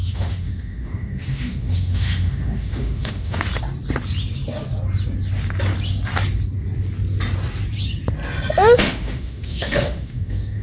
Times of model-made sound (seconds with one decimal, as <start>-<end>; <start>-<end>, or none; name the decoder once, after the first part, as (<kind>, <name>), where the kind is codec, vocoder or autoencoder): 0.0-3.5 (autoencoder, DAC-VAE); 8.8-10.6